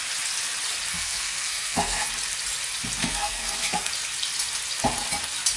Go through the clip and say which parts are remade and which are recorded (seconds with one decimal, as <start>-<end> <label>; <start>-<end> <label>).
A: 0.0-0.9 recorded; 0.9-2.1 remade; 2.1-3.0 recorded; 3.0-3.9 remade; 3.9-5.6 recorded